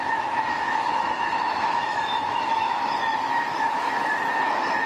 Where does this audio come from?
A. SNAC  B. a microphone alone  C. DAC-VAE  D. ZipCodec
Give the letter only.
C